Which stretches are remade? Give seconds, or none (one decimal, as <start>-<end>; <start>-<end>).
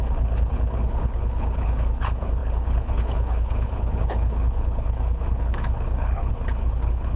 0.0-7.2